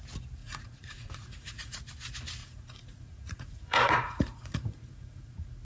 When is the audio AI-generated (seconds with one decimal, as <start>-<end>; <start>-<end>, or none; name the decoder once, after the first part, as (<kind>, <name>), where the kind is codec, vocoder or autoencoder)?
0.4-1.8 (vocoder, Vocos); 2.4-5.6